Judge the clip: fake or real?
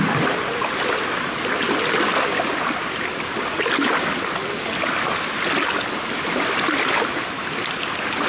real